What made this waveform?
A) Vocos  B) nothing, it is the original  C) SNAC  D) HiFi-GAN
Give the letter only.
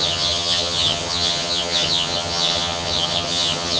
D